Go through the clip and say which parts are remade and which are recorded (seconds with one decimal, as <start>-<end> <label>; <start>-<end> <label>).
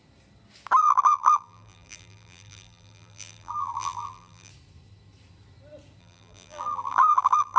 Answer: 0.0-0.8 recorded; 0.8-4.5 remade; 4.5-6.0 recorded; 6.0-7.6 remade